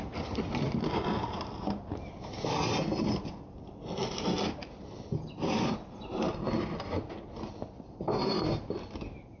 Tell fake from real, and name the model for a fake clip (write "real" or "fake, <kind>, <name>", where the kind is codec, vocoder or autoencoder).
real